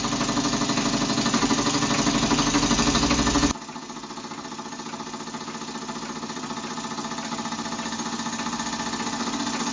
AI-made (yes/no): no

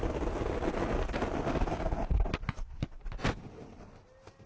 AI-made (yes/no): no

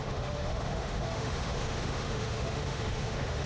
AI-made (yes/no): yes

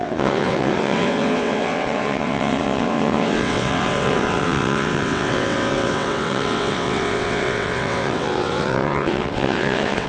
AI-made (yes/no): yes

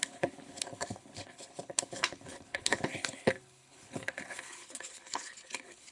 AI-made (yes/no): yes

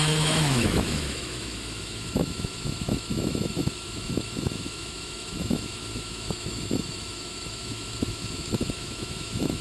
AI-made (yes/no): yes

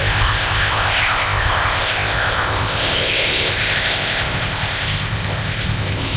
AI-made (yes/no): yes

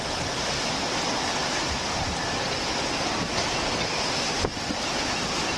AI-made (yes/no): no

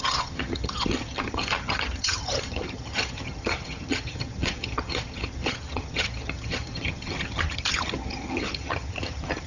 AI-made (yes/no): yes